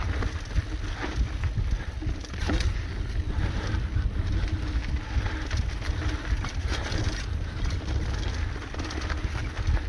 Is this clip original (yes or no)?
yes